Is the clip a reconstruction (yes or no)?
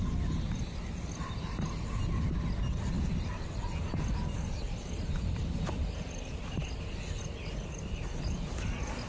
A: no